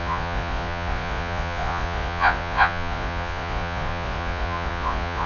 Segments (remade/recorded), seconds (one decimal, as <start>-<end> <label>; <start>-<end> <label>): 0.0-5.3 remade